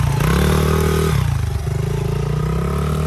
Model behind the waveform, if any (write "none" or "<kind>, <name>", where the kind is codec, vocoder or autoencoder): none